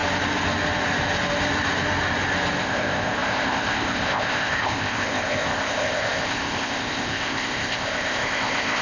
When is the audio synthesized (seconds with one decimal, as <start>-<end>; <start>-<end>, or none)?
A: 2.6-8.8